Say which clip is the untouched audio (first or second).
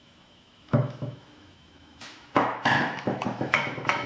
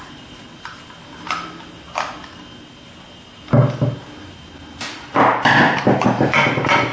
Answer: second